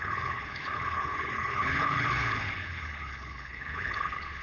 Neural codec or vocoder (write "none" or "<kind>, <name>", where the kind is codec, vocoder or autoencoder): codec, HILCodec